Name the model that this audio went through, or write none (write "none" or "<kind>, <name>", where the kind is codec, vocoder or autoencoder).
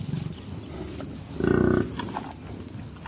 none